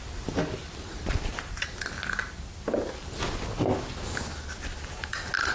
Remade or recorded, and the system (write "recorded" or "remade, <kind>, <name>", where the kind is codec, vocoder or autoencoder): recorded